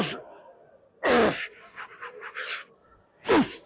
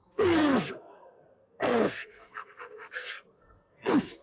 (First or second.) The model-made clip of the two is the second